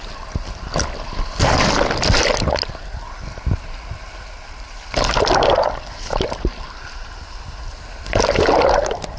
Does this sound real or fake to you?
real